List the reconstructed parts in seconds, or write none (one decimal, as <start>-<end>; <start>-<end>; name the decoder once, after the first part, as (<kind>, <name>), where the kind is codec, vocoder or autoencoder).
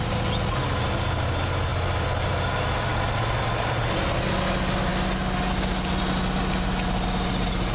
none